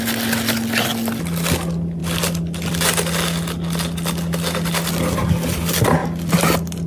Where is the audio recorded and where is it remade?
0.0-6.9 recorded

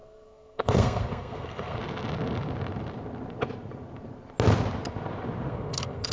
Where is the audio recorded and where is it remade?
0.0-1.8 remade; 1.8-5.5 recorded; 5.5-6.1 remade

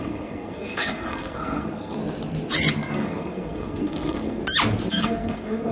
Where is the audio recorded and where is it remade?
0.0-2.0 remade; 2.0-2.9 recorded; 2.9-4.4 remade; 4.4-4.9 recorded; 4.9-5.7 remade

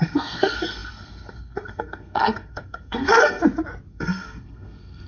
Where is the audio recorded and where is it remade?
0.0-3.4 remade; 3.4-3.9 recorded; 3.9-5.1 remade